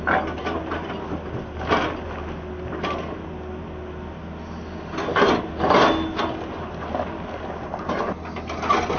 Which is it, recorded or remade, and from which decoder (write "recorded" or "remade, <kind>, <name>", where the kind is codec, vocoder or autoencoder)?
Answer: recorded